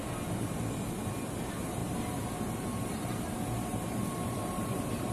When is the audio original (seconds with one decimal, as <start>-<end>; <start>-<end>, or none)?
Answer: 0.0-1.8